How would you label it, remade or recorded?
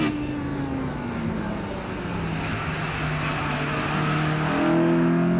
recorded